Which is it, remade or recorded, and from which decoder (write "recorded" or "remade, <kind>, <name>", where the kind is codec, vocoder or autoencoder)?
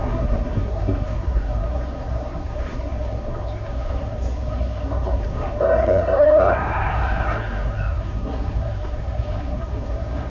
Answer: remade, codec, SNAC